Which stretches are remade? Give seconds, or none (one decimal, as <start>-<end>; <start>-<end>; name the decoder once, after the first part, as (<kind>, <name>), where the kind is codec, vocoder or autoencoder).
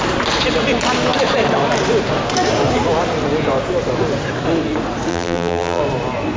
5.1-5.8 (vocoder, BigVGAN v2)